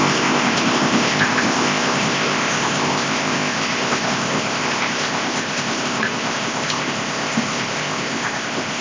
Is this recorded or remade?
remade